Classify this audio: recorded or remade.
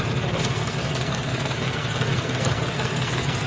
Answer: remade